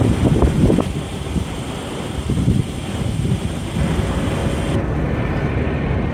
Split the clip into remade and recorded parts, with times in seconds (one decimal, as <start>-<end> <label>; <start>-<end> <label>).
0.0-4.4 remade; 4.4-5.0 recorded; 5.0-6.1 remade